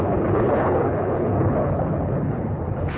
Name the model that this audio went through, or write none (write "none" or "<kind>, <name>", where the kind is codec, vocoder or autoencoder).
codec, HILCodec